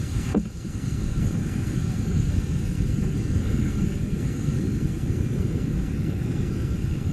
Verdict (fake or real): fake